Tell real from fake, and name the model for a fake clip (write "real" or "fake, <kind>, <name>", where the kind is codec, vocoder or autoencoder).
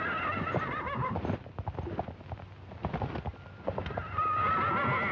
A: real